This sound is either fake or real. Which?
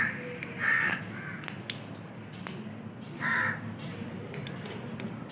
real